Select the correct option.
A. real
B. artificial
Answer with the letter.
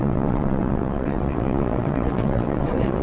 B